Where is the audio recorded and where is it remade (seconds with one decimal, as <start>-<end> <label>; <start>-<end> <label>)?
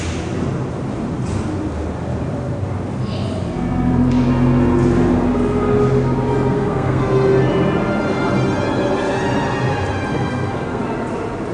0.0-6.5 recorded; 6.5-7.0 remade; 7.0-10.1 recorded; 10.1-10.8 remade; 10.8-11.5 recorded